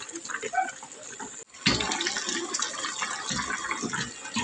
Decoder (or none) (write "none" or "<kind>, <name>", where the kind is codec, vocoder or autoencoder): none